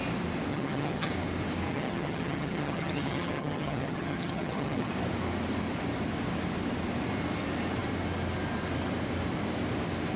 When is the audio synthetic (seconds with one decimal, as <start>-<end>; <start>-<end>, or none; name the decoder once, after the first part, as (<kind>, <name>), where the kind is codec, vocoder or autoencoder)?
0.5-1.1 (vocoder, HiFi-GAN); 1.7-4.9

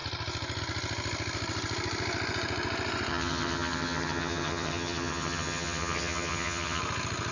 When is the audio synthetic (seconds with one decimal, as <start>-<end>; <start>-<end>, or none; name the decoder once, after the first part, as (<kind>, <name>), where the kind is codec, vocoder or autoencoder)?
3.1-6.8 (vocoder, HiFi-GAN)

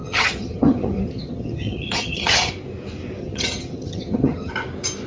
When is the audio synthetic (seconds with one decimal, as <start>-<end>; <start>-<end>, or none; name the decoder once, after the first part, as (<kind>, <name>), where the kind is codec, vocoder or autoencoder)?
0.0-2.5 (vocoder, HiFi-GAN); 3.2-4.5

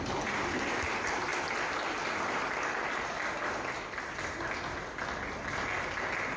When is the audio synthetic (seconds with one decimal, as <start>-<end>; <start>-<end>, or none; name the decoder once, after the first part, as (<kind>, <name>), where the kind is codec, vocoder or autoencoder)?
none

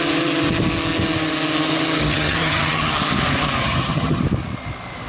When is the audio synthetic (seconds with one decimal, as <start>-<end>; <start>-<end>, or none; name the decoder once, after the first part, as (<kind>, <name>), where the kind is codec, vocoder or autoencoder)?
2.0-2.9 (vocoder, HiFi-GAN); 3.6-4.2

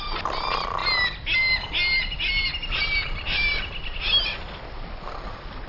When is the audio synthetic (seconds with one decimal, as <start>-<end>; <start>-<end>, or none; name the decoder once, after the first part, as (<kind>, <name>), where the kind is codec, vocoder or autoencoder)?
none